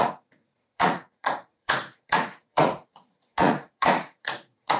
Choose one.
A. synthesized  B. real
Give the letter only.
A